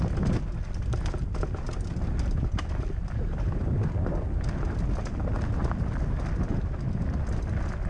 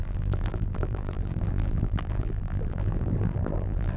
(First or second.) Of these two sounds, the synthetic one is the second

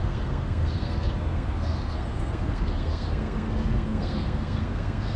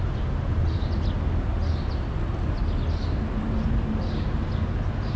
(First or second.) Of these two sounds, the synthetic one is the first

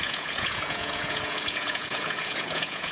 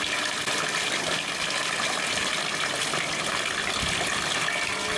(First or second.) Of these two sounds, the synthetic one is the first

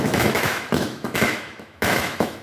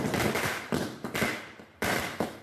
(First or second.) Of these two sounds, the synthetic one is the first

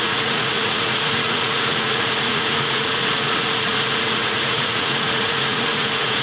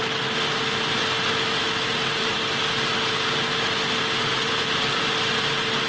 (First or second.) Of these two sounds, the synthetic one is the first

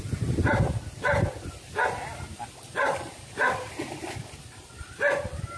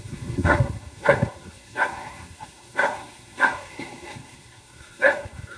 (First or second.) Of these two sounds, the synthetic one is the second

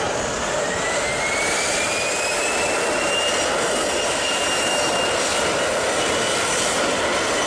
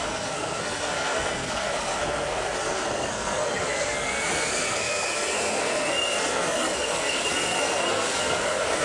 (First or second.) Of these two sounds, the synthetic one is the second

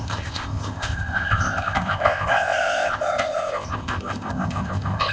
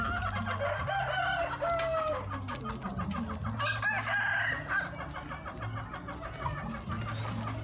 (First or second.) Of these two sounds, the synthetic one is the first